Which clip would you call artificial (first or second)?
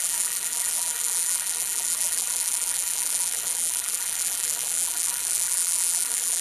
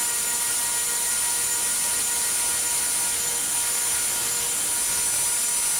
first